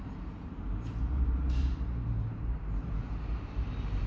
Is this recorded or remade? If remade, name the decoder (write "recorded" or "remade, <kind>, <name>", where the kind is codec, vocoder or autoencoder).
remade, vocoder, BigVGAN v2